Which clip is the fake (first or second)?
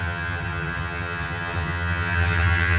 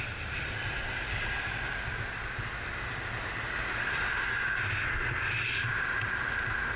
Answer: first